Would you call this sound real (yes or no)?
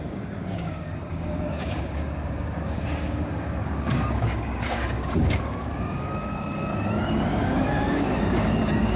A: no